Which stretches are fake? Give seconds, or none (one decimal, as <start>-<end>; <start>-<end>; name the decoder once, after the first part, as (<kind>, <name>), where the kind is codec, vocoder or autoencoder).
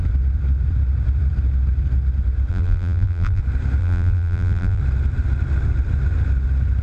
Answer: 2.5-3.4 (vocoder, BigVGAN v2); 3.8-4.8